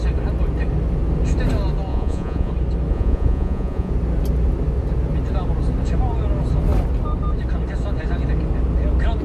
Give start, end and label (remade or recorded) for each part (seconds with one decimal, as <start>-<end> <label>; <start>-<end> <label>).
0.0-1.9 recorded; 1.9-2.5 remade; 2.5-2.9 recorded; 2.9-3.9 remade; 3.9-9.2 recorded